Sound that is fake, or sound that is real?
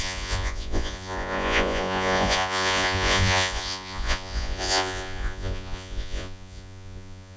fake